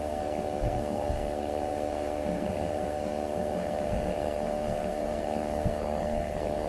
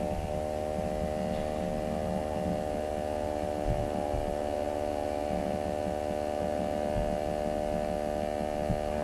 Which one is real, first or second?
second